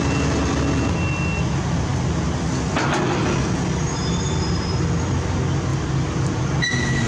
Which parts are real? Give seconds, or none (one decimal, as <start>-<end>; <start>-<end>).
0.0-7.1